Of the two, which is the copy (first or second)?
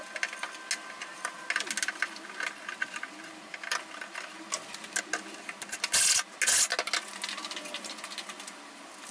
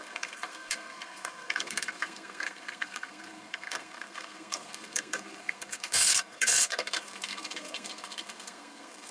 second